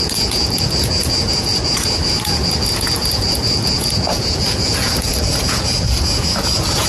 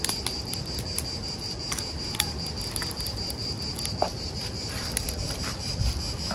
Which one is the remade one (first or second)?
first